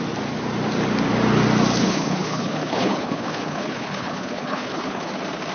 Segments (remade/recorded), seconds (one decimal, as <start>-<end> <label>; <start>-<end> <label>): 0.0-1.8 recorded; 1.8-5.1 remade; 5.1-5.5 recorded